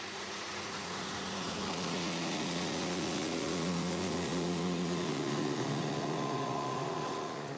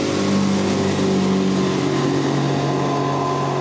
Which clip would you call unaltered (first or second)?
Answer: second